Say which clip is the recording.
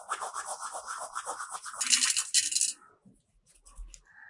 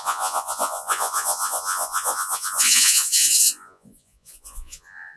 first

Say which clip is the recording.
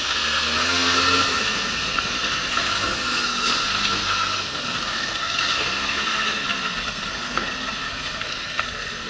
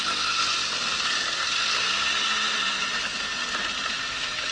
second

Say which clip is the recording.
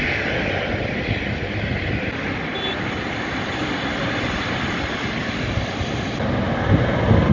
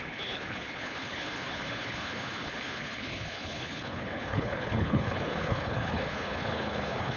first